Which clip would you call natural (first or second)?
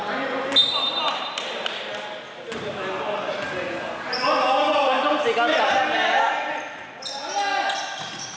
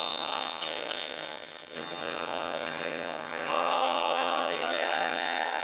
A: first